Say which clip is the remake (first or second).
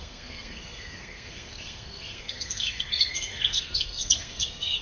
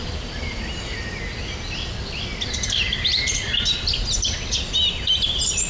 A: first